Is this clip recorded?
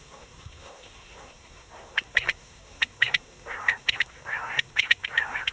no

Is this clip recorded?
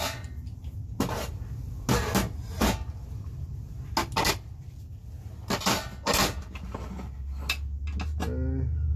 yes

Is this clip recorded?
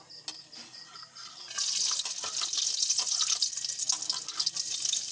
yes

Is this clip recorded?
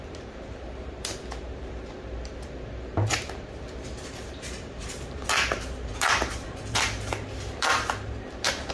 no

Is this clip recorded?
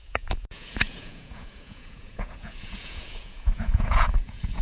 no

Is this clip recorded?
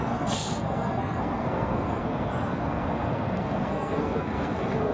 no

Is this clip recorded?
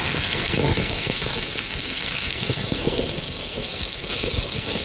no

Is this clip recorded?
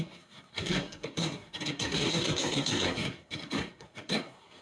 no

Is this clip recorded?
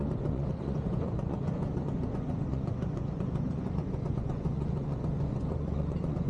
no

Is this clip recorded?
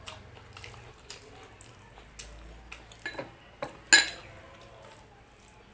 yes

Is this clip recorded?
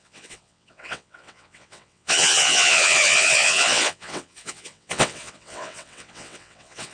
no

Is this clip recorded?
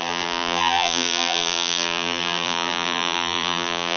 no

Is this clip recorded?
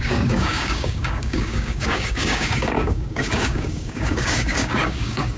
no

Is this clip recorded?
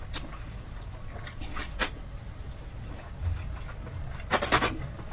yes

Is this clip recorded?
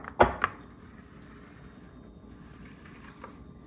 yes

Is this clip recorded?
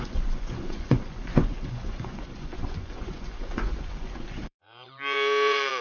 no